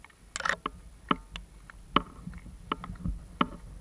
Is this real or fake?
real